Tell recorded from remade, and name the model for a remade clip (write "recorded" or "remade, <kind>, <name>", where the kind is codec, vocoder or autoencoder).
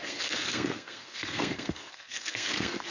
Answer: remade, codec, SNAC